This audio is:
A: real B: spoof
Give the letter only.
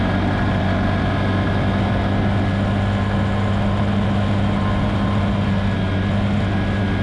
A